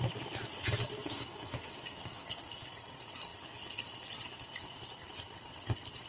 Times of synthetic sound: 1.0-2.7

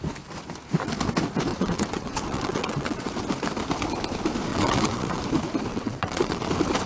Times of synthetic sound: 1.5-3.1; 4.5-5.2; 5.7-6.5